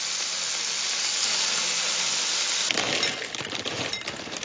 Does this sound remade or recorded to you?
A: recorded